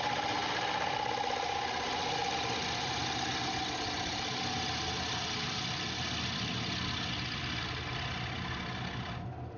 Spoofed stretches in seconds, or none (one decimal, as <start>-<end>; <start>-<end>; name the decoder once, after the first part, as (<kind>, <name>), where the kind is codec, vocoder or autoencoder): none